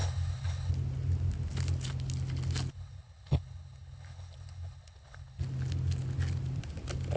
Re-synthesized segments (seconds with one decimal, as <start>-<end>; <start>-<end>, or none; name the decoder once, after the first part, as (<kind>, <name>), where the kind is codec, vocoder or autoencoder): 0.0-0.7 (codec, HILCodec); 2.7-5.4